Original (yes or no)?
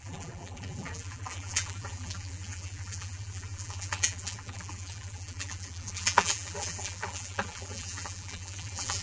no